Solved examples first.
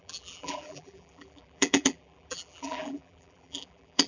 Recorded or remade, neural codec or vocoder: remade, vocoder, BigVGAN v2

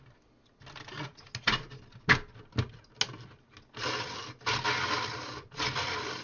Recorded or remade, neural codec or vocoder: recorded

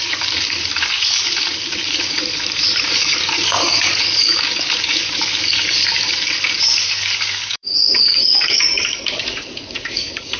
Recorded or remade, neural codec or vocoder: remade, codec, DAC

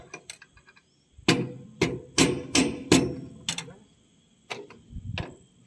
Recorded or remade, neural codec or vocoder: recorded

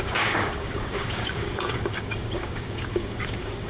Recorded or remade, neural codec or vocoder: remade, codec, DAC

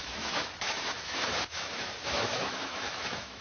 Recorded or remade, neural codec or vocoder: remade, autoencoder, DAC-VAE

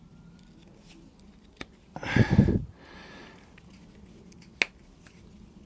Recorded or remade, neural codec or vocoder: recorded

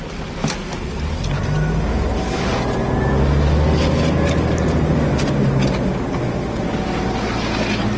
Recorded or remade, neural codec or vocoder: recorded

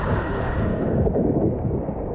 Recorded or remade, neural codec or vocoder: remade, codec, DAC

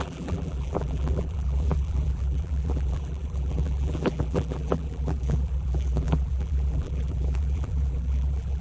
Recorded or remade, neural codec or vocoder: remade, vocoder, BigVGAN v2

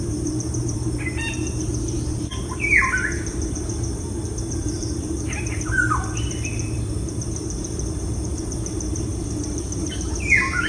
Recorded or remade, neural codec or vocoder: remade, vocoder, BigVGAN v2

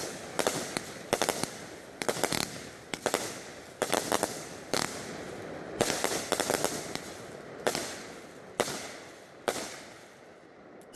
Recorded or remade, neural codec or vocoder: recorded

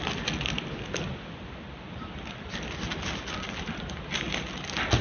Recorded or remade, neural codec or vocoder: recorded